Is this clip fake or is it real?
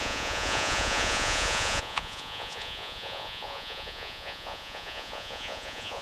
fake